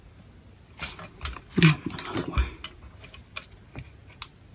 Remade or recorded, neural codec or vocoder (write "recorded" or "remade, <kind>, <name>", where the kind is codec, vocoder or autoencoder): recorded